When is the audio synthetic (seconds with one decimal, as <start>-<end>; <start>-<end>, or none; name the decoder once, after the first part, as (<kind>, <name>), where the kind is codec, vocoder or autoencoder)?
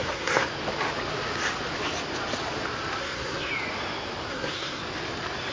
0.0-0.5 (codec, SNAC); 3.0-3.5; 4.3-4.8